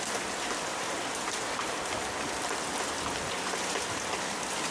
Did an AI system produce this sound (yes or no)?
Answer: no